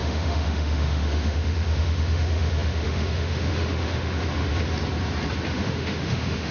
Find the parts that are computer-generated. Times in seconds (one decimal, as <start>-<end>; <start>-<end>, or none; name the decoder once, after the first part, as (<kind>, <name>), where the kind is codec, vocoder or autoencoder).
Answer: 0.0-4.5 (autoencoder, DAC-VAE); 5.5-6.5